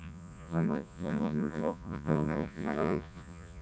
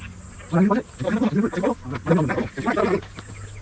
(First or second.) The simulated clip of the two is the first